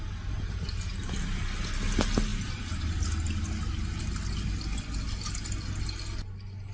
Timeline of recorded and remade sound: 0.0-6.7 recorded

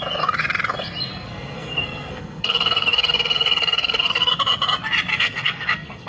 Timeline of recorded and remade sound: 0.0-1.1 recorded; 1.1-4.3 remade; 4.3-5.1 recorded; 5.1-6.1 remade